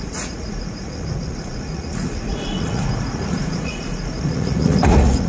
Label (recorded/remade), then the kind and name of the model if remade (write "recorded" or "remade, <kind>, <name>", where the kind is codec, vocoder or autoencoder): remade, vocoder, Vocos